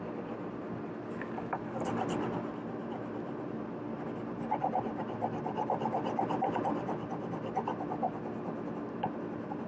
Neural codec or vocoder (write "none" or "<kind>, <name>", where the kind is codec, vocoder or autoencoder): none